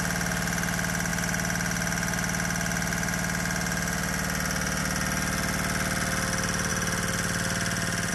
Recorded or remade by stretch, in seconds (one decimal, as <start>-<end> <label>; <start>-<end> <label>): 0.0-8.1 recorded

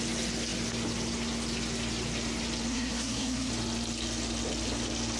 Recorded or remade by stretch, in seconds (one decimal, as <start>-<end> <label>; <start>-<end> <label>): 0.0-2.7 recorded; 2.7-3.5 remade; 3.5-5.2 recorded

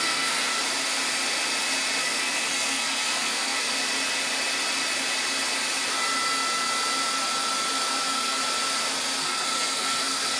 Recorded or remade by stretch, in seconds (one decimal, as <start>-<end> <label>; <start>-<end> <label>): 0.0-0.5 remade; 0.5-2.0 recorded; 2.0-3.7 remade; 3.7-8.0 recorded; 8.0-8.4 remade; 8.4-9.2 recorded; 9.2-10.4 remade

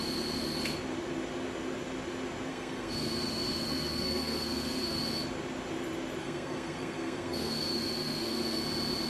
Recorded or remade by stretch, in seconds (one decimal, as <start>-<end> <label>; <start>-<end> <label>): 0.0-2.5 recorded; 2.5-5.0 remade; 5.0-6.2 recorded; 6.2-8.6 remade; 8.6-9.1 recorded

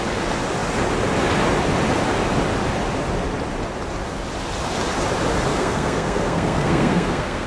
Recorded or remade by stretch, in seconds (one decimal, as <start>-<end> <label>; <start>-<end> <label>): 0.0-5.5 recorded; 5.5-7.5 remade

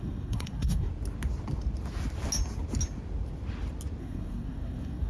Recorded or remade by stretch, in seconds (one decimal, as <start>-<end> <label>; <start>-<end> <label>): 0.0-0.9 remade; 0.9-4.0 recorded; 4.0-5.1 remade

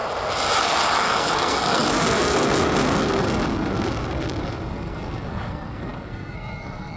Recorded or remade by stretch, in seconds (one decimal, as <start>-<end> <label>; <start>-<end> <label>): 0.0-0.6 recorded; 0.6-7.0 remade